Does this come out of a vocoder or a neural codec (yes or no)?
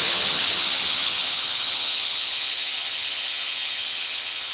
yes